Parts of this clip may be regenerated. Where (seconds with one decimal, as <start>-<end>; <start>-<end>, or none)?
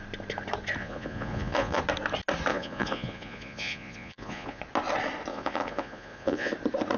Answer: 0.8-1.8; 2.5-4.6; 5.3-6.5